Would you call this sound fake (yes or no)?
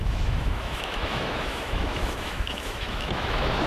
yes